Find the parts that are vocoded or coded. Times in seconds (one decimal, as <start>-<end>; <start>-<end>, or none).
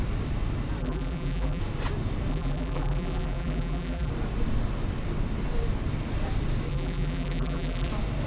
0.8-1.6; 2.3-4.1; 6.7-7.9